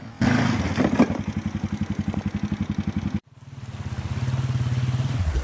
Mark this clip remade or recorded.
recorded